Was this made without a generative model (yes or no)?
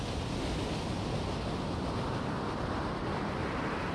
yes